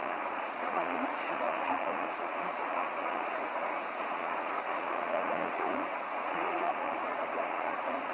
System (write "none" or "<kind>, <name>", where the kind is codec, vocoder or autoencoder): vocoder, Vocos